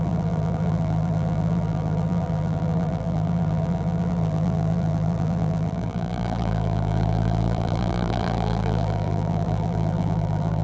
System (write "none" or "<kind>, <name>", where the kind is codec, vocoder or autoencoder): vocoder, BigVGAN v2